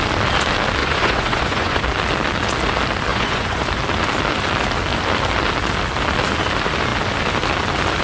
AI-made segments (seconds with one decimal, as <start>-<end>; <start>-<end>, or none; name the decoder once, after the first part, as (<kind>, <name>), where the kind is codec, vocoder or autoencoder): 0.8-1.8 (vocoder, Vocos); 3.1-3.6